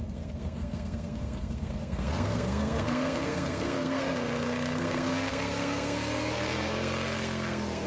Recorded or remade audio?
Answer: remade